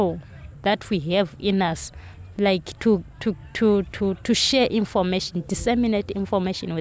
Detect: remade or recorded recorded